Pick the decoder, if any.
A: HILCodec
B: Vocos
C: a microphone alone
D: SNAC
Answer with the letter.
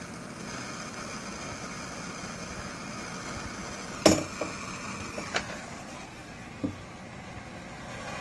C